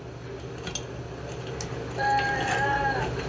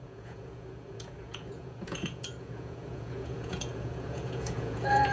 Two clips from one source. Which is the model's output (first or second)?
second